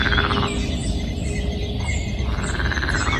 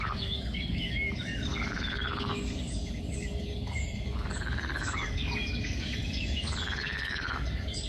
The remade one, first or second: second